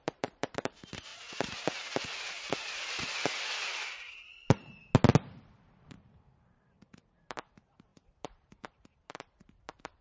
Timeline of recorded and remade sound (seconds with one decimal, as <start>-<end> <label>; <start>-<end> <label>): 0.0-1.1 remade; 1.1-4.1 recorded; 4.1-4.8 remade; 4.8-5.4 recorded; 5.4-10.0 remade